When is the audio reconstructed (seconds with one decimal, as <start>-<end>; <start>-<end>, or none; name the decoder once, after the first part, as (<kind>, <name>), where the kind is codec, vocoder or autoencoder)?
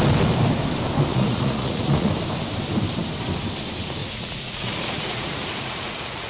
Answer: 1.1-2.1 (vocoder, Vocos); 4.0-6.3